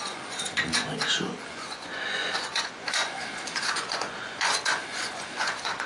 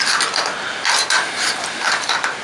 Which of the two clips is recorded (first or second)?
second